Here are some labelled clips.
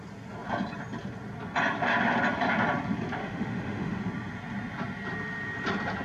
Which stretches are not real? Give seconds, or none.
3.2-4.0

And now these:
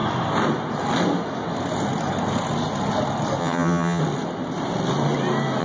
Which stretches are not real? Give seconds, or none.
3.4-4.0

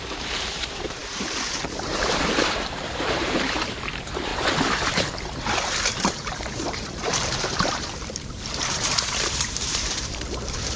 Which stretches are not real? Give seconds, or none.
0.0-4.3; 5.7-10.8

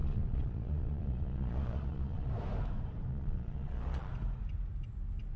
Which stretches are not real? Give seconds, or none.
0.0-2.3; 3.1-4.1